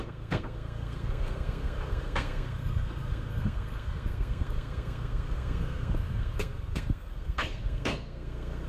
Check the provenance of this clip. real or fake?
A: fake